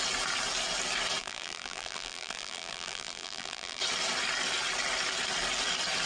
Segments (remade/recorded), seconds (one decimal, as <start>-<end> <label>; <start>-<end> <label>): 0.0-1.2 recorded; 1.2-3.8 remade; 3.8-6.1 recorded